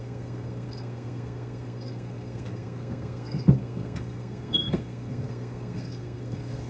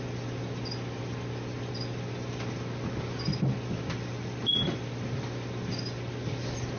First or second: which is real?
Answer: second